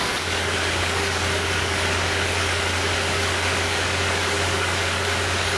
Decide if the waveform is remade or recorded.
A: remade